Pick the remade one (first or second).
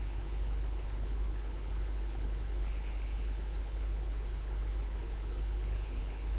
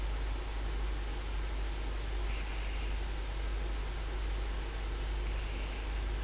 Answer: first